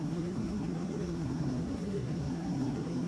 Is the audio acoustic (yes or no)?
no